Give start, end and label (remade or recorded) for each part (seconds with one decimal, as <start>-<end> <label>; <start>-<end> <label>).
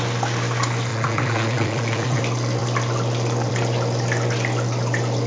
0.0-0.9 recorded; 0.9-2.2 remade; 2.2-5.3 recorded